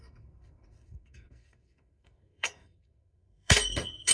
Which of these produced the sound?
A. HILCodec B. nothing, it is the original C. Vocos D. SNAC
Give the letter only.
D